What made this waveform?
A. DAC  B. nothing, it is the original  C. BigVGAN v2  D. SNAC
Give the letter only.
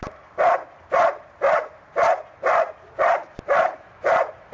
B